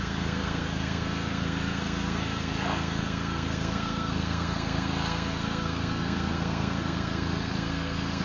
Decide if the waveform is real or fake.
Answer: fake